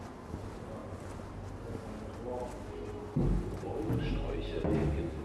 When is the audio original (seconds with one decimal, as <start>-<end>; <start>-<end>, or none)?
0.0-5.2